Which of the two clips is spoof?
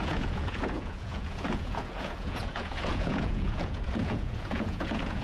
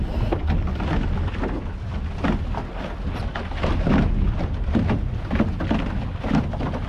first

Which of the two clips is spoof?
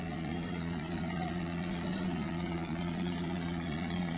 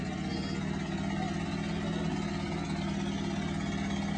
first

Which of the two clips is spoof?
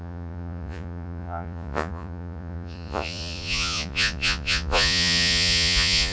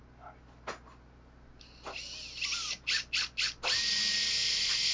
first